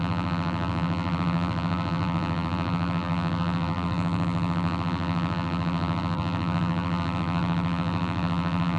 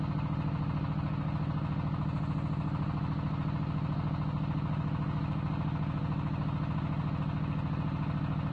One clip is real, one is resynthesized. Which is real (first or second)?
second